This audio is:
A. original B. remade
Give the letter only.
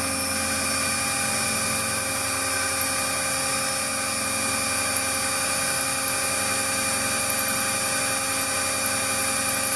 A